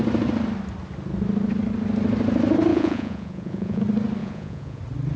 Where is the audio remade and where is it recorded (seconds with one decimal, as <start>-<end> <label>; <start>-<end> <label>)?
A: 0.0-2.7 recorded; 2.7-3.8 remade; 3.8-4.2 recorded; 4.2-4.8 remade; 4.8-5.2 recorded